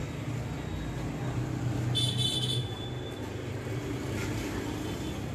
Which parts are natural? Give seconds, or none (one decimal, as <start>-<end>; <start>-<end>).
0.0-5.3